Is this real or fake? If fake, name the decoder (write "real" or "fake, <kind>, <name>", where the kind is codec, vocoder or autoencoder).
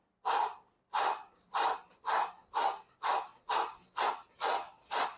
real